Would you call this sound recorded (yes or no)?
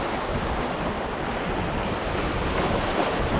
yes